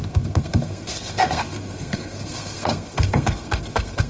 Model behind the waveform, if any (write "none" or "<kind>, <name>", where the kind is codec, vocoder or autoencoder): codec, SNAC